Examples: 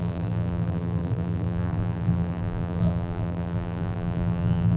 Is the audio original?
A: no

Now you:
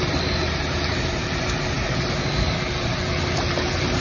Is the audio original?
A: no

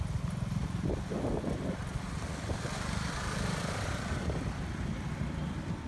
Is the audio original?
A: no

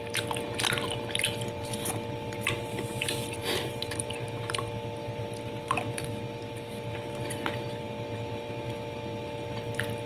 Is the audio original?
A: no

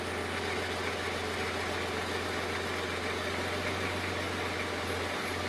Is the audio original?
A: yes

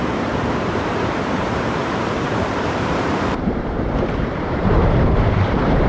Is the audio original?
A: no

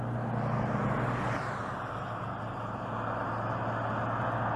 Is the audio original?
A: yes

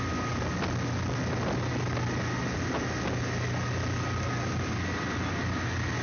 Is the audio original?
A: yes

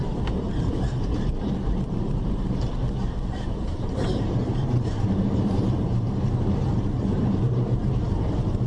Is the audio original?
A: no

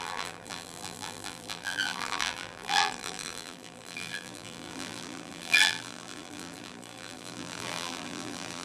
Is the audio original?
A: no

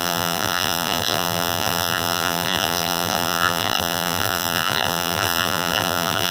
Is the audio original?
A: no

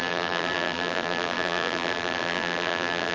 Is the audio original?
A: no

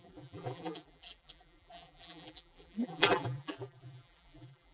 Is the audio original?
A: no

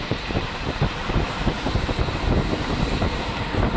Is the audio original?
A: no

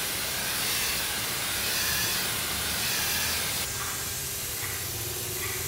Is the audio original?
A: yes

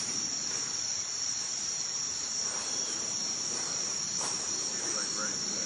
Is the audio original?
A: no